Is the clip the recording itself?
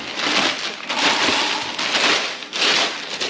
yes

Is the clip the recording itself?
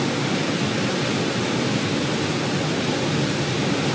yes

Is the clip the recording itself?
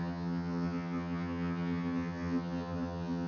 no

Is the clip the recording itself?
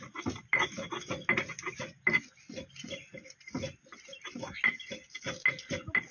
yes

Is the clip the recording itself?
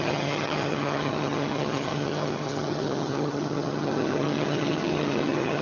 no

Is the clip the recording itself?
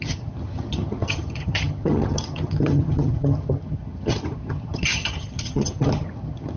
no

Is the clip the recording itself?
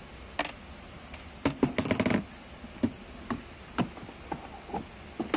yes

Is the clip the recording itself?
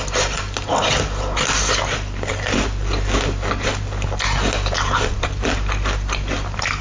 yes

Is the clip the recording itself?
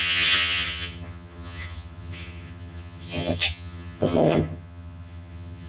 no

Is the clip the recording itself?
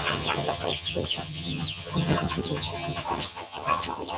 no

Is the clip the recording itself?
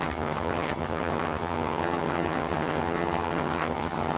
no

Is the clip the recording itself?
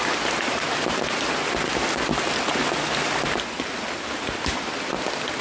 yes